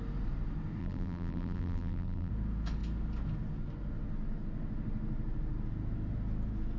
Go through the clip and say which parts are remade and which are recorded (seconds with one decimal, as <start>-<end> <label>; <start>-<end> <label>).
0.0-0.8 recorded; 0.8-2.3 remade; 2.3-6.8 recorded